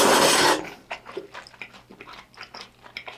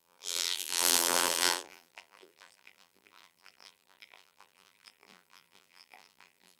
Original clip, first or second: first